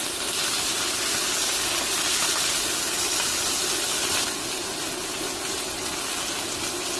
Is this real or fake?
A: real